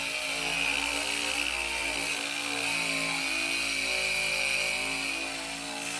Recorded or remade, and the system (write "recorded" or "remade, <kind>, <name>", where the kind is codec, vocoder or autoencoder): recorded